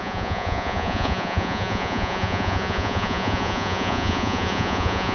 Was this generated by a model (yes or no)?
yes